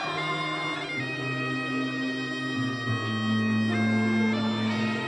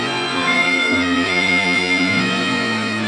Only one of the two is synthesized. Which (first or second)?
second